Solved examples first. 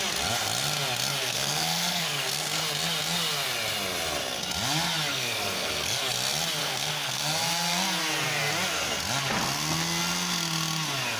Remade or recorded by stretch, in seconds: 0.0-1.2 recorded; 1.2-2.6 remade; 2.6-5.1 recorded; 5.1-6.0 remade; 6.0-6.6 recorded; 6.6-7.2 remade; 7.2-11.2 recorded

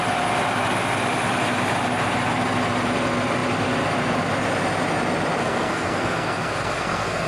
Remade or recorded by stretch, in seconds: 0.0-5.4 recorded; 5.4-7.3 remade

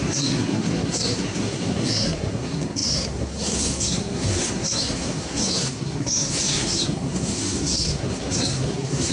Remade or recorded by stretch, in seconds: 0.0-9.1 remade

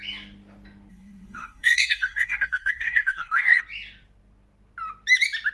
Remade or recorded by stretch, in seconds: 0.0-0.9 recorded; 0.9-3.6 remade; 3.6-5.5 recorded

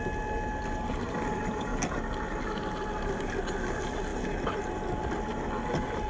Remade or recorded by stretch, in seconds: 0.0-6.1 recorded